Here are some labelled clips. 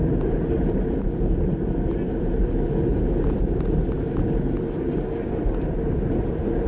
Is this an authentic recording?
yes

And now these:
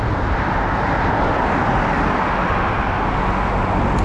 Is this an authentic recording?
yes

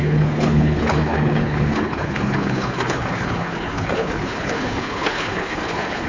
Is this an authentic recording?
no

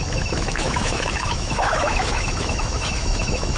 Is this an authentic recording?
no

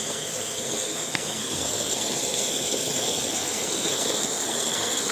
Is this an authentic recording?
no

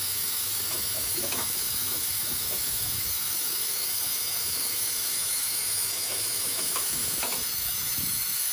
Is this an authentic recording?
no